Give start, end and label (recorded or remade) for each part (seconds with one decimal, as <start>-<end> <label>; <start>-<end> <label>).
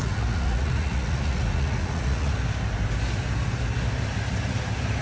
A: 0.0-2.3 remade; 2.3-5.0 recorded